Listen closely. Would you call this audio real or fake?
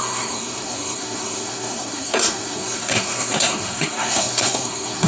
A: fake